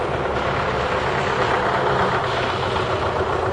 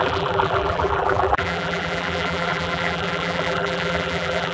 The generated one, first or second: second